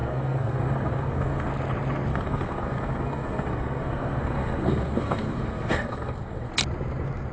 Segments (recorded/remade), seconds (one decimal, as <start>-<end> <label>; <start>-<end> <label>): 0.0-1.5 remade; 1.5-2.1 recorded; 2.1-6.5 remade; 6.5-7.3 recorded

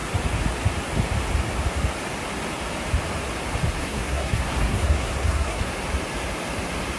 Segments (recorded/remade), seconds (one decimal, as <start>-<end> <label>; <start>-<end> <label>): 0.0-3.8 recorded; 3.8-5.7 remade; 5.7-7.0 recorded

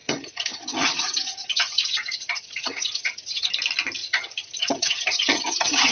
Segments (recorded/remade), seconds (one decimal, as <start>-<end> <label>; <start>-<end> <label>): 0.0-3.5 remade; 3.5-4.0 recorded; 4.0-5.9 remade

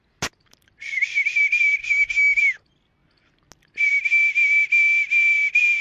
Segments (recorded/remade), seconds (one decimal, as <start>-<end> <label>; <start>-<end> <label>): 0.0-1.8 recorded; 1.8-2.4 remade; 2.4-5.8 recorded

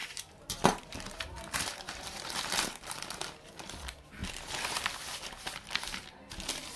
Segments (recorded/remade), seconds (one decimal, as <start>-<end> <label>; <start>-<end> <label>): 0.0-2.8 remade; 2.8-4.2 recorded; 4.2-4.8 remade; 4.8-6.8 recorded